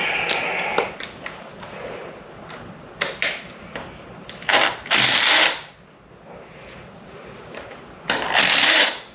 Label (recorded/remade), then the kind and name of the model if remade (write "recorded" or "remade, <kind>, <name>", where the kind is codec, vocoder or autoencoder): recorded